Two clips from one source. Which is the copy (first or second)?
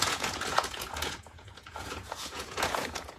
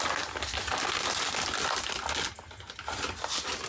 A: first